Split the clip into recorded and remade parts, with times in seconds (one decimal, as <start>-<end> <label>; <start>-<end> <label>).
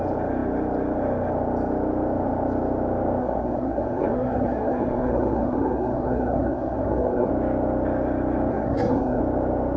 0.0-3.2 recorded; 3.2-7.3 remade; 7.3-8.5 recorded; 8.5-9.2 remade; 9.2-9.8 recorded